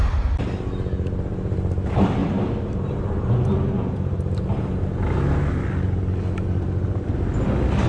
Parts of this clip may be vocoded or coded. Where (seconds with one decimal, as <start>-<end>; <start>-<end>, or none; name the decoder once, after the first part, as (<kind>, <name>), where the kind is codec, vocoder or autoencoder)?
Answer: 2.2-3.3 (vocoder, BigVGAN v2)